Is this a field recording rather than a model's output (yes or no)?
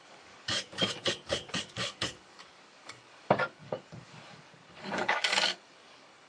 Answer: no